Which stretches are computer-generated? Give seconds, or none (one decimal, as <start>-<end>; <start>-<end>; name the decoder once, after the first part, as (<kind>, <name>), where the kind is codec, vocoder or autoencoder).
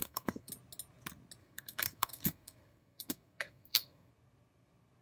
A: 0.0-0.5 (codec, SNAC); 1.4-4.1